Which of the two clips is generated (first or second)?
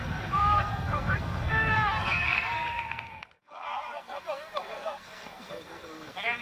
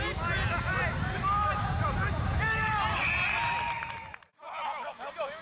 first